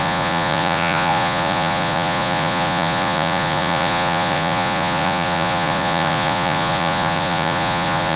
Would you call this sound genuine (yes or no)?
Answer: no